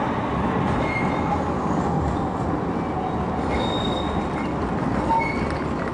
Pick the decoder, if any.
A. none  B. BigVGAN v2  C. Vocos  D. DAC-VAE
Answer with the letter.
A